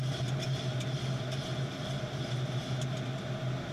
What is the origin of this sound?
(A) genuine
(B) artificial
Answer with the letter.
A